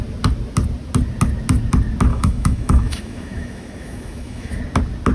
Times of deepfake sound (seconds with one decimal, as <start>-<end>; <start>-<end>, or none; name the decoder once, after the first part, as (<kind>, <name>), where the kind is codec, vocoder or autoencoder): 2.1-4.6 (autoencoder, DAC-VAE)